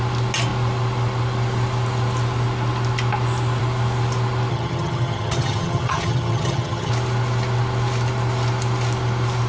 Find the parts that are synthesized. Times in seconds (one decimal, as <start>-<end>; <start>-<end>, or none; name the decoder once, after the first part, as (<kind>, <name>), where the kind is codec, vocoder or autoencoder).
4.5-6.9 (vocoder, HiFi-GAN)